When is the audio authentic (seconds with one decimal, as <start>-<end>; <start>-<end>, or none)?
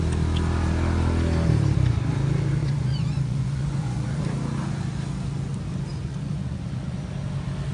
0.0-2.6; 4.2-5.9; 7.0-7.7